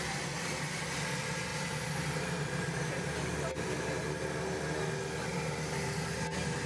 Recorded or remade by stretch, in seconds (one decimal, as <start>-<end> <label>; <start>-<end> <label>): 0.0-6.7 recorded